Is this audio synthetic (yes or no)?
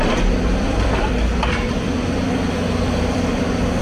yes